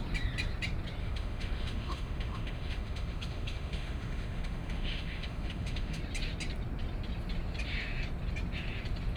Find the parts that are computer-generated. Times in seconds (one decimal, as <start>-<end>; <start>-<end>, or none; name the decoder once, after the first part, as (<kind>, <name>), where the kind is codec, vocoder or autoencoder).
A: 1.0-6.0 (autoencoder, DAC-VAE)